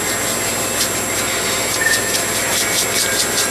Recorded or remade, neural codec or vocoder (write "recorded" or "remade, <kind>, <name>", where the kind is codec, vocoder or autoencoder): recorded